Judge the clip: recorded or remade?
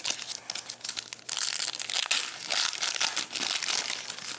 recorded